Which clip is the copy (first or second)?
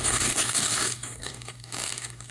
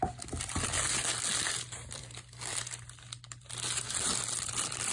first